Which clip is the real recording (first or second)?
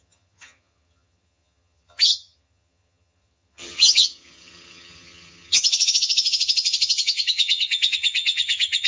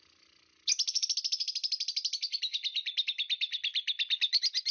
second